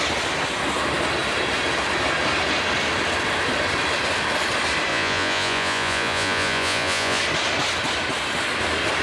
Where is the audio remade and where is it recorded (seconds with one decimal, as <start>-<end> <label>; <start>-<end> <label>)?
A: 0.0-4.9 recorded; 4.9-7.2 remade; 7.2-9.0 recorded